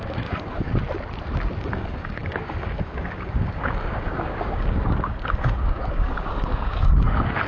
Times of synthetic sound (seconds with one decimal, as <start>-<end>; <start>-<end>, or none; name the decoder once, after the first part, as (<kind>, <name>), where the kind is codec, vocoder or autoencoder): 0.0-0.7 (codec, DAC); 1.6-7.5